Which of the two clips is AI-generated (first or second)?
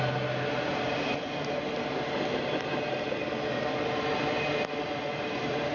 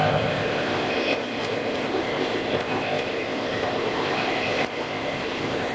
second